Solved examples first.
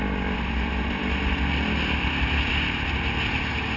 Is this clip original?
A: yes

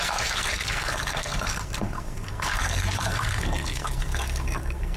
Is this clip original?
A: no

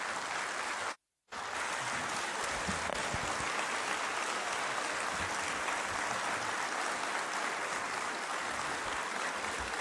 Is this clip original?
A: yes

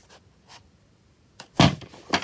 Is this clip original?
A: yes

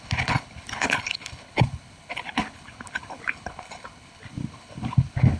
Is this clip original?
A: no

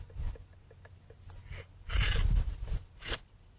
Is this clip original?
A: yes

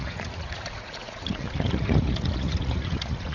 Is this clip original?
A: no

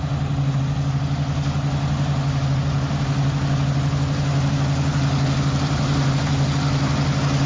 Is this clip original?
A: yes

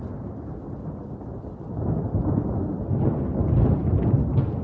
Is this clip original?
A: yes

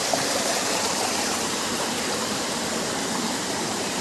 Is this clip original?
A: no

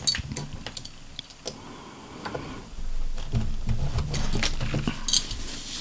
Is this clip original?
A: yes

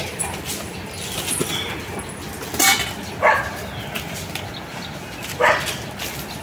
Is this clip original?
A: yes